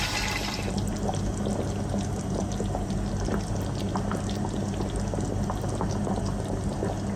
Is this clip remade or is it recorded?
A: recorded